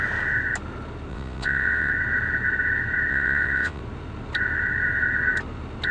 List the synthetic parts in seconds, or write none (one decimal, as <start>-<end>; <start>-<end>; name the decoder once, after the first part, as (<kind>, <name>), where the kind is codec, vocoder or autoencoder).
1.1-1.9 (vocoder, WaveNeXt); 3.1-3.8